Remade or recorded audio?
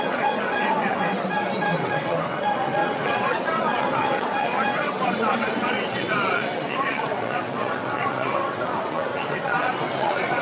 remade